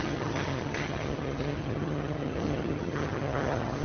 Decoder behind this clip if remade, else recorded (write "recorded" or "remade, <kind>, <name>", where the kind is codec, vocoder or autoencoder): remade, vocoder, HiFi-GAN